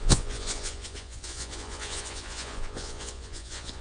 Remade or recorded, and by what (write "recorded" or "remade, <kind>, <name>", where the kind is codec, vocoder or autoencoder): remade, vocoder, Vocos